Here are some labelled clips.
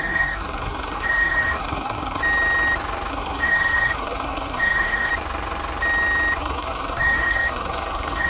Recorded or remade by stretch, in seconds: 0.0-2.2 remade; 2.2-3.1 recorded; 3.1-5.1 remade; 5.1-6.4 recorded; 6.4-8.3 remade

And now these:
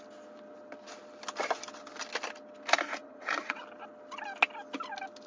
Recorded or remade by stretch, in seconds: 0.0-3.0 recorded; 3.0-3.6 remade; 3.6-5.3 recorded

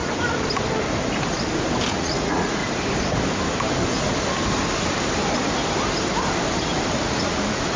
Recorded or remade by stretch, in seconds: 0.0-1.9 recorded; 1.9-2.6 remade; 2.6-7.0 recorded; 7.0-7.8 remade

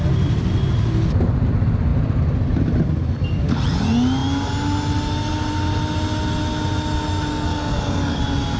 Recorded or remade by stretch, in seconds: 0.0-7.3 recorded; 7.3-8.2 remade; 8.2-8.6 recorded

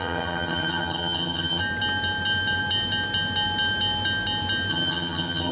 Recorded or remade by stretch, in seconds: 0.0-1.6 remade; 1.6-4.7 recorded; 4.7-5.5 remade

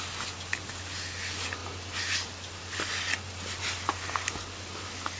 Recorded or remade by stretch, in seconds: 0.0-5.2 recorded

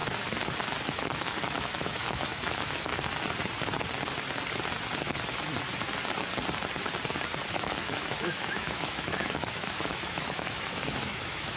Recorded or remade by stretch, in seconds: 0.0-0.9 recorded; 0.9-2.9 remade; 2.9-7.5 recorded; 7.5-11.6 remade